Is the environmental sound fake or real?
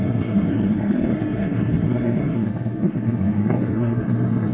fake